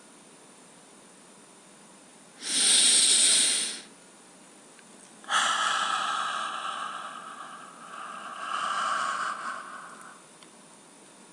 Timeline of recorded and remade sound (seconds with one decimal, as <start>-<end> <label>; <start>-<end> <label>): 0.0-11.3 recorded